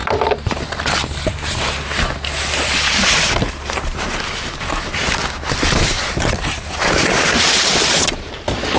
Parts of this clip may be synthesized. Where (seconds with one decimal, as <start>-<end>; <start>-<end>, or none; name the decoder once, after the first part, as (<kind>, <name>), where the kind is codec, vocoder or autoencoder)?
none